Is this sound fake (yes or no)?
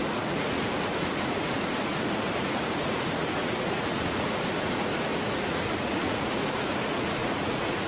yes